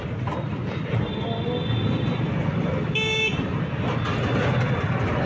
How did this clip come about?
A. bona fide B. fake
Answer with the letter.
A